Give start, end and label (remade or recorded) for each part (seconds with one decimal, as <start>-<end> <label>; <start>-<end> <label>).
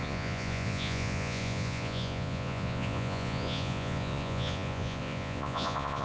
0.0-6.0 remade